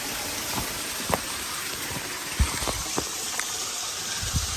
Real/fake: fake